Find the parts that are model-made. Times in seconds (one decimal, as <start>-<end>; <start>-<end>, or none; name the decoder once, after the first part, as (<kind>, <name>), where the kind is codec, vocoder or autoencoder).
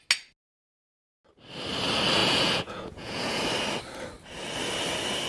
2.2-3.4 (vocoder, Vocos)